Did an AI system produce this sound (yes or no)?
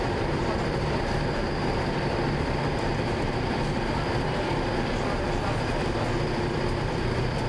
yes